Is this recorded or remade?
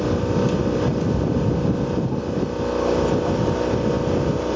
recorded